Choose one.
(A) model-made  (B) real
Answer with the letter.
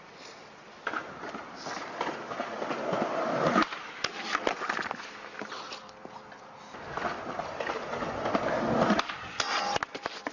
B